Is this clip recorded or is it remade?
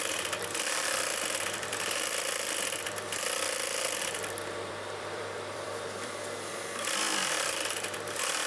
remade